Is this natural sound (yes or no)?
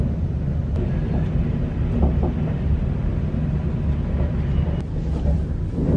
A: yes